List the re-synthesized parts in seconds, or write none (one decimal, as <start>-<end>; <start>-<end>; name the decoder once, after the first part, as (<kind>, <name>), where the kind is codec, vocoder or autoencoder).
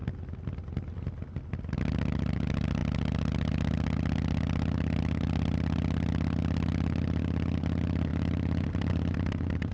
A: none